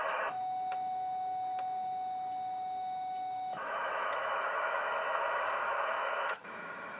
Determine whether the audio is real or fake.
fake